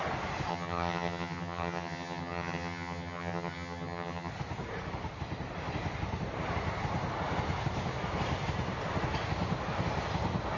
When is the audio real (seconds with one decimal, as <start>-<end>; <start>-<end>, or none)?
0.0-0.5; 4.3-10.6